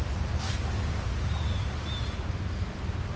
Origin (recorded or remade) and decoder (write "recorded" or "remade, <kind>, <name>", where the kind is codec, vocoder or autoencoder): recorded